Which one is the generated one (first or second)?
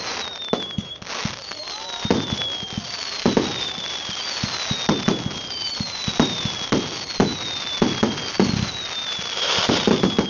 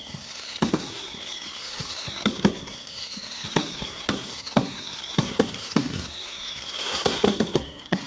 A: second